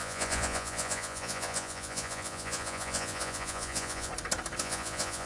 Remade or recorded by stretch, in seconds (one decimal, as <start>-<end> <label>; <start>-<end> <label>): 0.0-4.1 remade; 4.1-4.6 recorded; 4.6-5.3 remade